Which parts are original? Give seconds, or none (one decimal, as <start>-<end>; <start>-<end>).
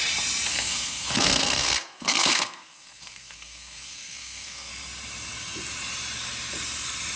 0.0-0.5; 4.7-7.2